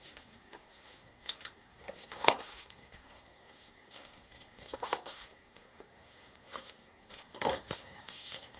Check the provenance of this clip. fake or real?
fake